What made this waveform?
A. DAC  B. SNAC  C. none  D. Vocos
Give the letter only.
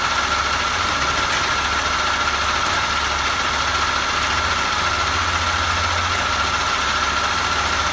C